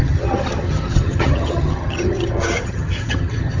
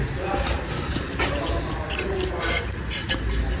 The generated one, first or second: first